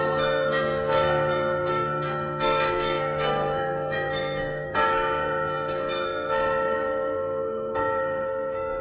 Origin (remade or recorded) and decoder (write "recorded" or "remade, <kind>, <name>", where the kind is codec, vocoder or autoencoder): remade, codec, SNAC